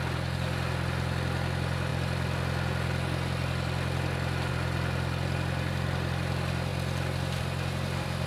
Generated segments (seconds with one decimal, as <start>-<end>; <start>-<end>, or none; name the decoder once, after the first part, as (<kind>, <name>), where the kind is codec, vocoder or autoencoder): none